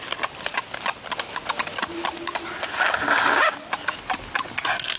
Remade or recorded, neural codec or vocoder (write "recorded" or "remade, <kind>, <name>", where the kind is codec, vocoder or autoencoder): recorded